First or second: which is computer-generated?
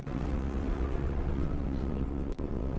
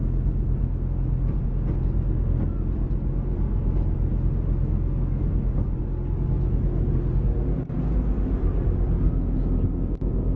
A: first